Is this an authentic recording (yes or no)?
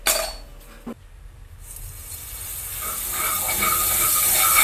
yes